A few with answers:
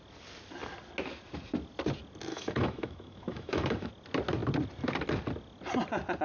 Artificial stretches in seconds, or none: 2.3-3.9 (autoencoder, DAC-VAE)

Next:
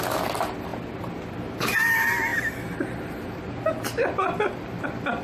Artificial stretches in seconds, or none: none

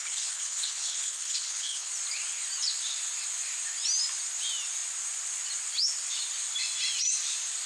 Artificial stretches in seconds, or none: 0.0-1.9 (codec, HILCodec)